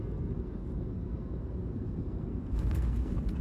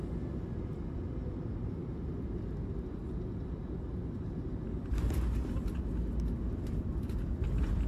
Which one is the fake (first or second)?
first